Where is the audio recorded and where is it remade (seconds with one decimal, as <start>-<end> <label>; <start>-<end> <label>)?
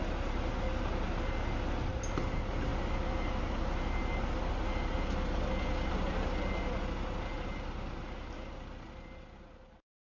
0.0-10.0 recorded